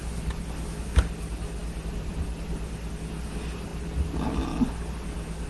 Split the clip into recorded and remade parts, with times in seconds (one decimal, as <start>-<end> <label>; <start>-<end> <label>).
0.0-5.5 recorded